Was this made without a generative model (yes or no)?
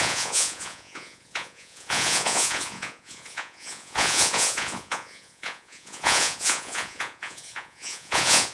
no